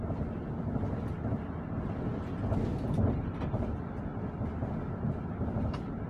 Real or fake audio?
real